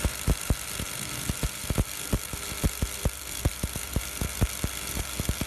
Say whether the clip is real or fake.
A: fake